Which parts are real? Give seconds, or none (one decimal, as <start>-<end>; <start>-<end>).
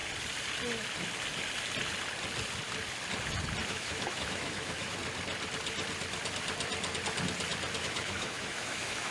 0.0-3.7; 5.0-7.8